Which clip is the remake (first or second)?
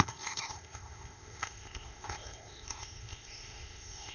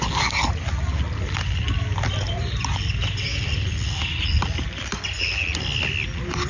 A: first